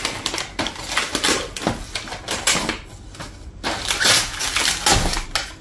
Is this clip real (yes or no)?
yes